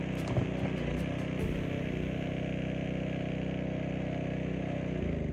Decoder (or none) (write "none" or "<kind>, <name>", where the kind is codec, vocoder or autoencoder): none